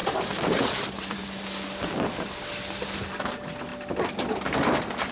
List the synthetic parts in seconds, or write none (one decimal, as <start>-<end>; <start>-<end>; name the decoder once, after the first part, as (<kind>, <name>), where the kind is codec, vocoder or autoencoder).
0.0-5.1 (vocoder, BigVGAN v2)